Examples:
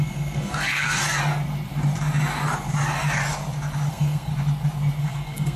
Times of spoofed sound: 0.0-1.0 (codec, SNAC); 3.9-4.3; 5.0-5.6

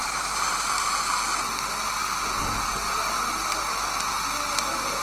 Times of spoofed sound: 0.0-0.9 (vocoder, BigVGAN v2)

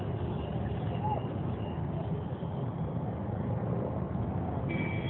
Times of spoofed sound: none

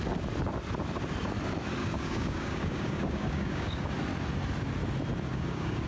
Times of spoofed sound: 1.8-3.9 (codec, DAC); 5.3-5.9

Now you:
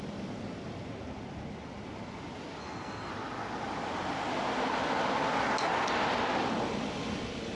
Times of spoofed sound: 2.6-3.1 (codec, SNAC)

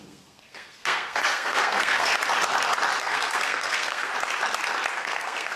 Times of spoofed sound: 0.0-2.1 (codec, SNAC); 3.0-4.1; 4.9-5.6

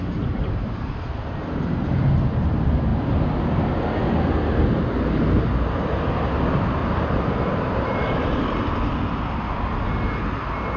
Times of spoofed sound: 6.8-9.4 (vocoder, BigVGAN v2)